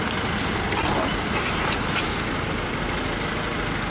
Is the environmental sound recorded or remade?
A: recorded